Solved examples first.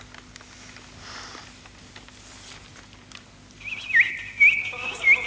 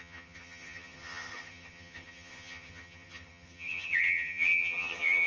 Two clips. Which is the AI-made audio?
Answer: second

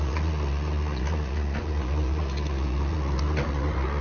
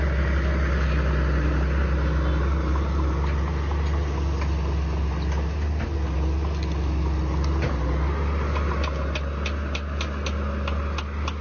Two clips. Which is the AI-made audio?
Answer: first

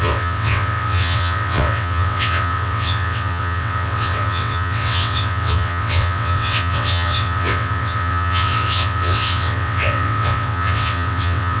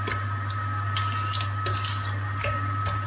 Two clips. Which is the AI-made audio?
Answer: first